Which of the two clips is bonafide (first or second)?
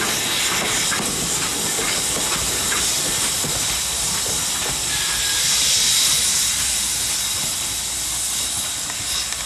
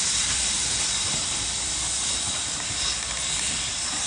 first